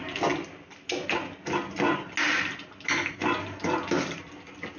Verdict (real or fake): real